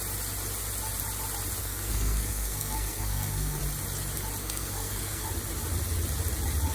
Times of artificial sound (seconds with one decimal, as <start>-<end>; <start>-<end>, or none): 1.6-3.6; 4.4-5.3